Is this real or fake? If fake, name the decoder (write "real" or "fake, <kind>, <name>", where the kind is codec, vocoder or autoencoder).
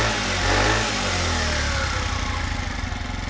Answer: real